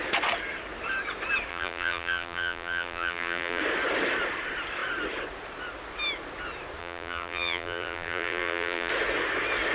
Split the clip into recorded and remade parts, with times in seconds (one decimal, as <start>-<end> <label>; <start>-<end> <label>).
0.0-1.5 recorded; 1.5-3.6 remade; 3.6-6.8 recorded; 6.8-8.9 remade; 8.9-9.7 recorded

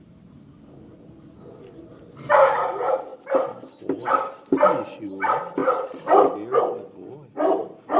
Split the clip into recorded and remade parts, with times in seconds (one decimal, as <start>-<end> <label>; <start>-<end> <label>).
0.0-3.1 recorded; 3.1-4.1 remade; 4.1-8.0 recorded

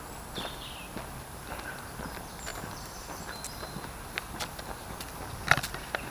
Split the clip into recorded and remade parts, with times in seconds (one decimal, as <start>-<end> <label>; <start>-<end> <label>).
0.0-2.5 recorded; 2.5-3.2 remade; 3.2-6.1 recorded